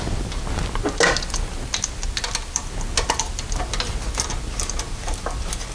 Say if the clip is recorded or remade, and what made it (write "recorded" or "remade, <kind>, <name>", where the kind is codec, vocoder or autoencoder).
recorded